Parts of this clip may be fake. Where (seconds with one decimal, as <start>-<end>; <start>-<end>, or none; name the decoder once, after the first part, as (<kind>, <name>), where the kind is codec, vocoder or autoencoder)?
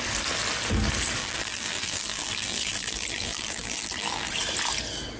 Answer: 1.2-4.3 (vocoder, BigVGAN v2)